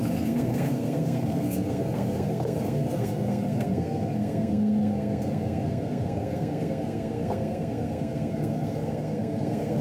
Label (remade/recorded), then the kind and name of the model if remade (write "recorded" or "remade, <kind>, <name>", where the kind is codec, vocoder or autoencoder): remade, codec, SNAC